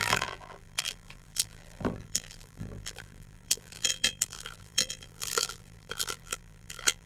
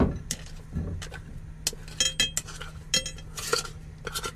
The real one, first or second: second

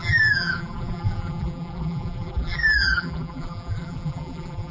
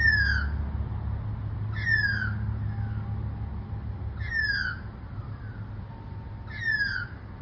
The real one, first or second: second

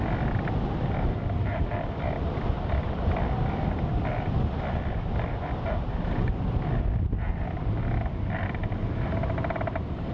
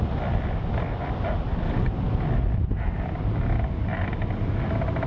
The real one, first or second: second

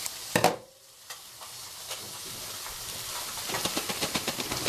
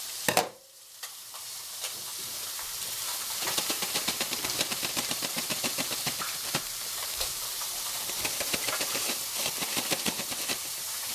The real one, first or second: first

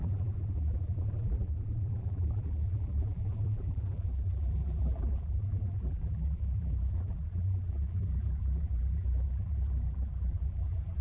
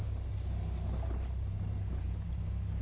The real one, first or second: second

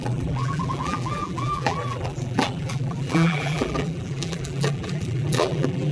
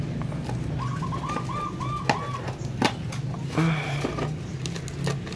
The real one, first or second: second